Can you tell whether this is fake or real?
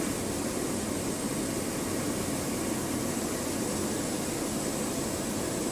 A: real